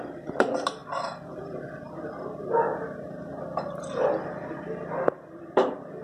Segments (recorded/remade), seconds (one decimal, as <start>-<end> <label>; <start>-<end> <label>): 0.0-6.0 recorded